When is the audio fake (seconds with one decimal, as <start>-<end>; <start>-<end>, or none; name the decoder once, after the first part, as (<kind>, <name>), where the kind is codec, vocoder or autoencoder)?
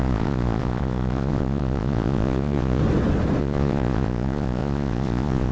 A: 0.0-2.8 (vocoder, Vocos); 3.4-5.5